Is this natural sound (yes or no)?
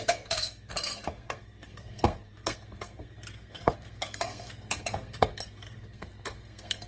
no